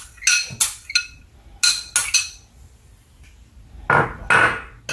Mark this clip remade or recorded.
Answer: recorded